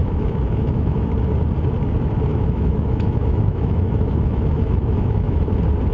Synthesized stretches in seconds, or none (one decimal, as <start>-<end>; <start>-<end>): 0.0-1.1; 2.3-5.4